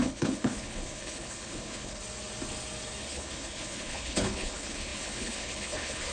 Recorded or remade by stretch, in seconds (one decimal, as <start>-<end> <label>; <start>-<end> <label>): 0.0-2.0 remade; 2.0-3.0 recorded; 3.0-6.1 remade